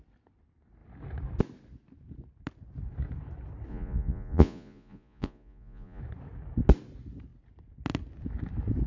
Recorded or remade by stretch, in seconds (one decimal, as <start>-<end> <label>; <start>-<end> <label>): 0.0-3.7 recorded; 3.7-6.0 remade; 6.0-8.9 recorded

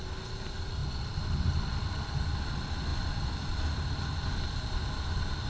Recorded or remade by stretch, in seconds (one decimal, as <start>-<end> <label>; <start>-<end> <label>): 0.0-5.5 recorded

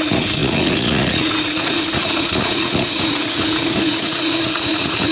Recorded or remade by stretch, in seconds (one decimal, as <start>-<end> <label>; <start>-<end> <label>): 0.0-5.1 remade

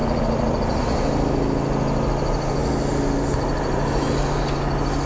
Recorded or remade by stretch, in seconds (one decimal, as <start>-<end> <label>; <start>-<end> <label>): 0.0-5.1 recorded

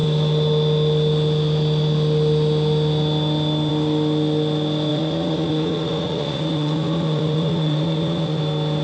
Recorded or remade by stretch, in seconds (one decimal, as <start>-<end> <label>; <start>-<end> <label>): 0.0-4.9 recorded; 4.9-8.4 remade; 8.4-8.8 recorded